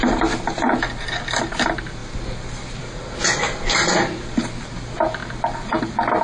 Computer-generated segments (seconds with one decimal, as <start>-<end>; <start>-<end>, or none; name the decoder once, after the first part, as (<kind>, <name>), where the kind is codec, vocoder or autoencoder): none